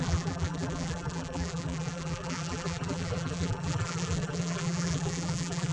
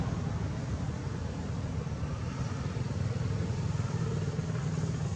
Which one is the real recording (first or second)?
second